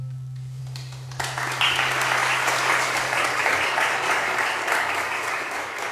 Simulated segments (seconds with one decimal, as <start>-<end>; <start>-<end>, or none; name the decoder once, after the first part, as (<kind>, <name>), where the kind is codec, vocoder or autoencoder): 0.0-0.6 (codec, DAC); 1.6-5.9